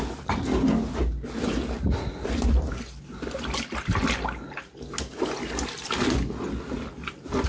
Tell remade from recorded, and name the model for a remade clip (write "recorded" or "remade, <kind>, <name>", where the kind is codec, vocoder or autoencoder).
recorded